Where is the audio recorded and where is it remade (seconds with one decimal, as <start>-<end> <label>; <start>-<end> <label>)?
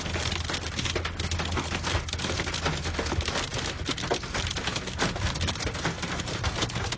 0.0-7.0 recorded